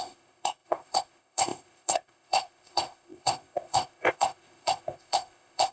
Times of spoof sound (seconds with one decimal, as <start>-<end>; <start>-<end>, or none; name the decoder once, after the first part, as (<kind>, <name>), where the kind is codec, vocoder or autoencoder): 0.0-5.7 (codec, ZipCodec)